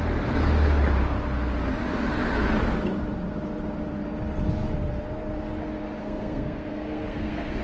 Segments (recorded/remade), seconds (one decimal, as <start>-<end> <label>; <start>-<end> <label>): 0.0-6.0 recorded; 6.0-7.6 remade